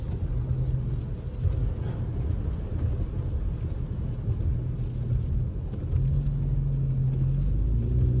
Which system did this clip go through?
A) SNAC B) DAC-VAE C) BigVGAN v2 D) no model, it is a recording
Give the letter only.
D